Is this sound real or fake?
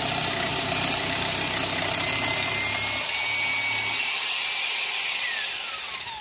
real